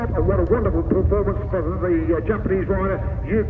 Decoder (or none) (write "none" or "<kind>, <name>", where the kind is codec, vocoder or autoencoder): none